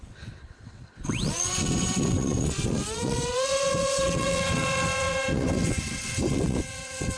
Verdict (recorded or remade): remade